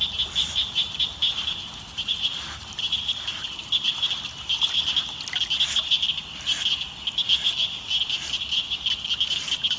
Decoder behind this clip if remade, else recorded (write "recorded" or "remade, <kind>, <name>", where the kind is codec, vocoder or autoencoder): recorded